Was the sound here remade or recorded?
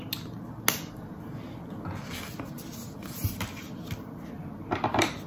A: recorded